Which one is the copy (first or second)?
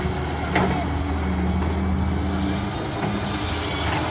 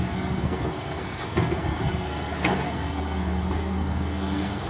second